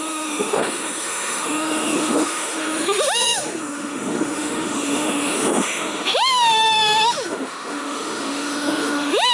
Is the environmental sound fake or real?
fake